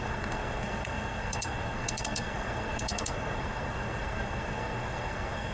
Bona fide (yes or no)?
no